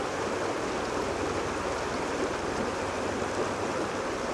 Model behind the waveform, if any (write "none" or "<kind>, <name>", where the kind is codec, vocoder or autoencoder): none